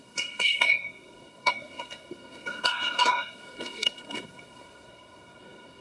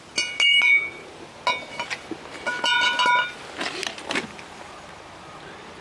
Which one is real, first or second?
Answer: second